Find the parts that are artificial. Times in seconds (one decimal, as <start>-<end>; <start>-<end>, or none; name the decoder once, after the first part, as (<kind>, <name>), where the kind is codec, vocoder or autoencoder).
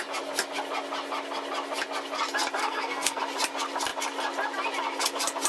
2.6-3.2 (codec, SNAC)